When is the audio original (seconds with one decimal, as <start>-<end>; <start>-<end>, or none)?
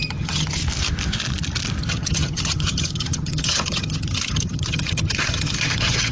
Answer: 0.6-1.8